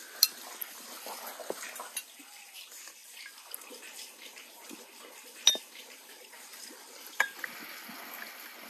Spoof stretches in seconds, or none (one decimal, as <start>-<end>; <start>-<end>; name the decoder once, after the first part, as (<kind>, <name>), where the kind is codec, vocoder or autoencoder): 5.8-6.6 (vocoder, BigVGAN v2)